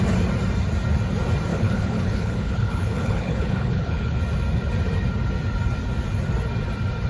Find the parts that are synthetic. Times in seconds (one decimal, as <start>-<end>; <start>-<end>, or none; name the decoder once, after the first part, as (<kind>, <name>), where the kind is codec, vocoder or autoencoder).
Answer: 1.5-4.2 (codec, HILCodec)